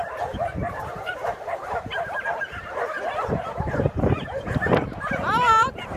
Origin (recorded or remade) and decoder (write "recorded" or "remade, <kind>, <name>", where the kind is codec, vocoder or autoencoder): remade, vocoder, BigVGAN v2